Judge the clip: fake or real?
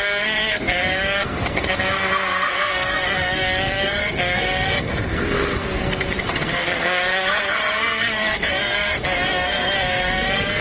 fake